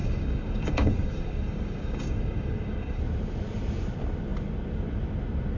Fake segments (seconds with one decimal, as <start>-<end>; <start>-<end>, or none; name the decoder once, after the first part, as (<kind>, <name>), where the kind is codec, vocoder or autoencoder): 0.0-3.0 (codec, DAC)